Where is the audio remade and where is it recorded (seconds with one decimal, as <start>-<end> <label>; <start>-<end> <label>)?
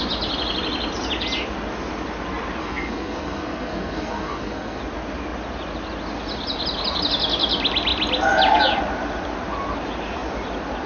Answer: 0.0-2.6 recorded; 2.6-4.8 remade; 4.8-10.9 recorded